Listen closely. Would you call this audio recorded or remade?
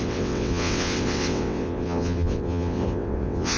remade